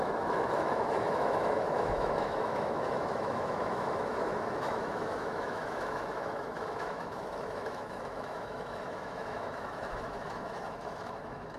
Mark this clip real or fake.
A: fake